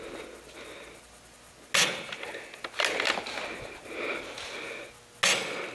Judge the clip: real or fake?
real